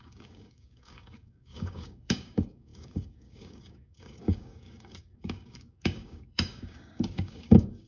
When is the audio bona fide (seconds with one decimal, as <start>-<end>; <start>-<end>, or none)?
none